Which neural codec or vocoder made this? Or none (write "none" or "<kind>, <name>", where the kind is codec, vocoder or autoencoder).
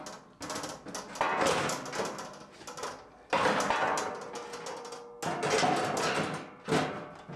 none